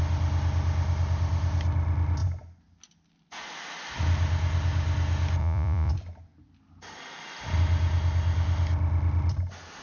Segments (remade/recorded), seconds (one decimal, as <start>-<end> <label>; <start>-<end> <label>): 0.0-5.4 recorded; 5.4-5.9 remade; 5.9-9.8 recorded